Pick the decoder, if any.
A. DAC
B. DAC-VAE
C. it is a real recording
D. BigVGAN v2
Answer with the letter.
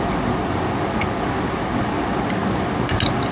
C